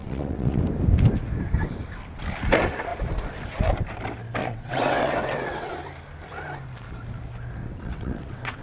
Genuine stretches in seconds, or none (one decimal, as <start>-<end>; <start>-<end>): 0.6-4.4; 5.7-7.6